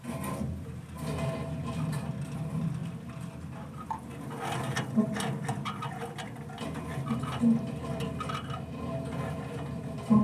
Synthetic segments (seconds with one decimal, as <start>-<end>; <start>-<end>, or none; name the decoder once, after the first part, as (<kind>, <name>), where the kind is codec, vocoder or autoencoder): none